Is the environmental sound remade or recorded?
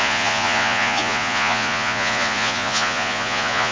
remade